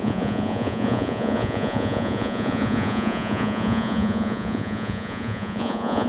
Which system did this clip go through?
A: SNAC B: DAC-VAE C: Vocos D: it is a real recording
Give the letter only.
C